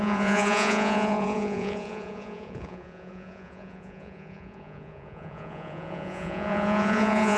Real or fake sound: fake